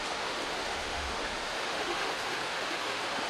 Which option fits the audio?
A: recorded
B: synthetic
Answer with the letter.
B